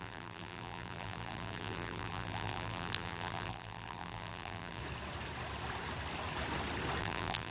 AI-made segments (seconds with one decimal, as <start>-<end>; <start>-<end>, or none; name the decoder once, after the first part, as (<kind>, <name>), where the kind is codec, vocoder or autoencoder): 0.0-4.8 (vocoder, BigVGAN v2); 7.0-7.5